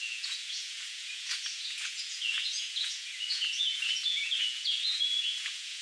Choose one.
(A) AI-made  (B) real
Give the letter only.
A